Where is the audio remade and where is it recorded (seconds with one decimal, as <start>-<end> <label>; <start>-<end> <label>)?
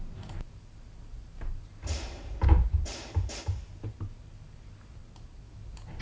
0.0-1.3 recorded; 1.3-4.4 remade; 4.4-5.0 recorded; 5.0-5.5 remade; 5.5-6.0 recorded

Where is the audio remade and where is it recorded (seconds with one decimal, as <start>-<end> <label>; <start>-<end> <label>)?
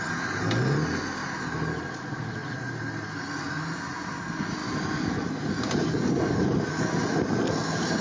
0.0-8.0 recorded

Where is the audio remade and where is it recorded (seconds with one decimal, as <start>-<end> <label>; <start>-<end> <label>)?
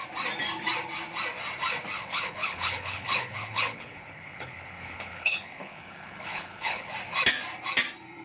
0.0-2.0 recorded; 2.0-6.9 remade; 6.9-8.2 recorded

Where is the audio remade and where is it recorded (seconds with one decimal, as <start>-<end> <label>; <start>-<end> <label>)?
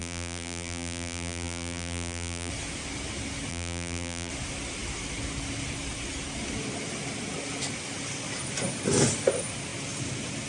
0.0-2.5 remade; 2.5-3.5 recorded; 3.5-4.3 remade; 4.3-10.5 recorded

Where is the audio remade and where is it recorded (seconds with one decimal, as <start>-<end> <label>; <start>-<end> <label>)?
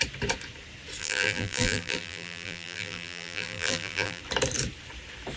0.0-1.0 recorded; 1.0-4.2 remade; 4.2-5.4 recorded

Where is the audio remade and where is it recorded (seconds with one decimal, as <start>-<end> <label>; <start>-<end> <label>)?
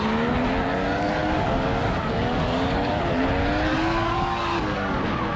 0.0-0.7 recorded; 0.7-3.0 remade; 3.0-3.7 recorded; 3.7-5.0 remade; 5.0-5.4 recorded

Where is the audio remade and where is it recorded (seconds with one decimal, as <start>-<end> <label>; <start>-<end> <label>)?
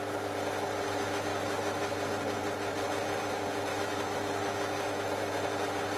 0.0-1.3 recorded; 1.3-1.9 remade; 1.9-3.7 recorded; 3.7-4.2 remade; 4.2-6.0 recorded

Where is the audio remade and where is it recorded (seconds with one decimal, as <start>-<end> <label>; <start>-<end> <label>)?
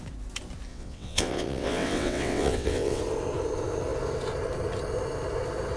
0.0-0.7 recorded; 0.7-3.0 remade; 3.0-5.8 recorded